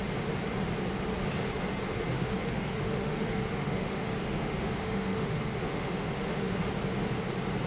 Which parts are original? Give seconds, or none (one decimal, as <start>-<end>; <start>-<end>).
0.0-2.1; 6.7-7.7